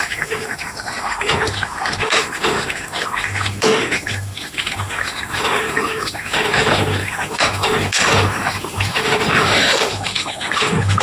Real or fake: fake